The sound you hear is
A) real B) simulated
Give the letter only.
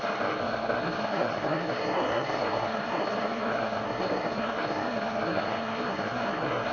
B